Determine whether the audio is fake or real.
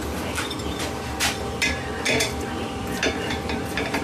fake